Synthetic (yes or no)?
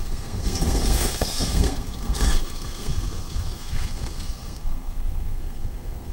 yes